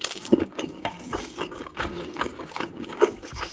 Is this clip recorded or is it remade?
remade